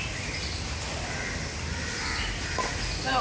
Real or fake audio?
real